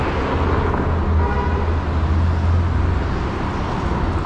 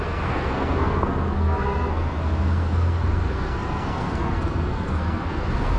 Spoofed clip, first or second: second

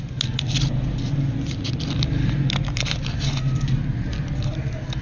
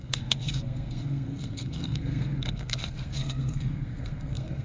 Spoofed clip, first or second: second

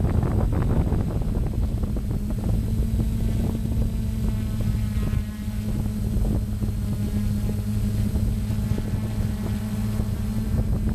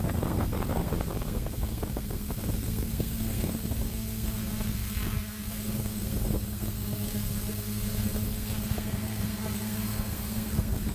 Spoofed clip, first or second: second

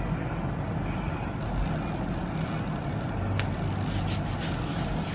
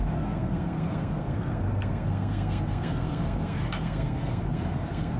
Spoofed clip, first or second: second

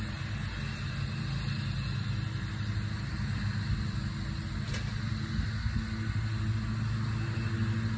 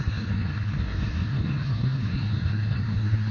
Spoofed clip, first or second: second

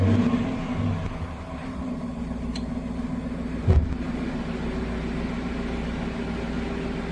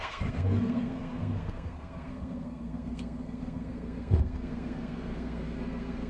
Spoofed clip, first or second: second